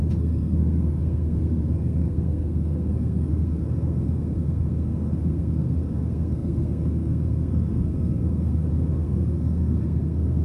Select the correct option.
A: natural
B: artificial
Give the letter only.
B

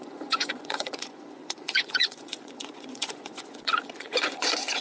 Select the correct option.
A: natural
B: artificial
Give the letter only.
B